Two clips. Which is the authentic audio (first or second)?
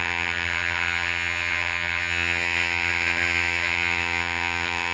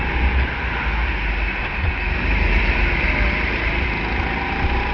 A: second